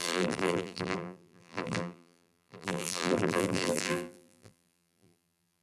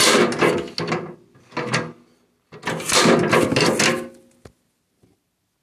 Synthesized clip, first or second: first